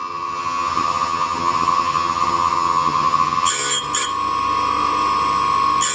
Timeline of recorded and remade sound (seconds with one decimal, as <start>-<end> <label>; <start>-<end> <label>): 0.0-3.5 remade; 3.5-5.9 recorded